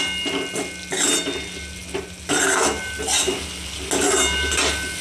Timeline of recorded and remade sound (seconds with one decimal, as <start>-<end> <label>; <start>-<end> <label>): 0.0-5.0 recorded